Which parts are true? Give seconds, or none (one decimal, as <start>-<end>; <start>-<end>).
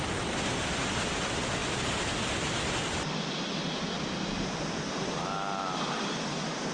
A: 0.0-6.7